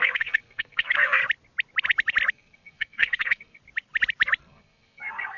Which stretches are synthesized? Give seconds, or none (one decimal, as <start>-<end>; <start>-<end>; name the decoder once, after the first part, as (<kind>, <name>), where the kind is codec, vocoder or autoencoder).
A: 0.0-1.2 (codec, SNAC); 2.3-3.6; 4.4-5.4